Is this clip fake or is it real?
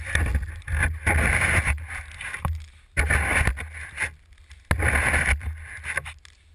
real